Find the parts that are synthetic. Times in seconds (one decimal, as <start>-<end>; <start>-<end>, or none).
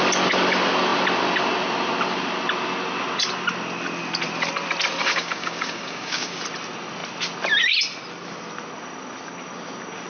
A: 5.0-6.4